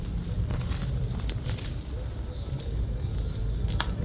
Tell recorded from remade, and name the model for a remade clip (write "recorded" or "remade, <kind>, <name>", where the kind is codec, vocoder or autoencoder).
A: recorded